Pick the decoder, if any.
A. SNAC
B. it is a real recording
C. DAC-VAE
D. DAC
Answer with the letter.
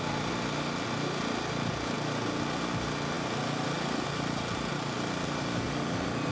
B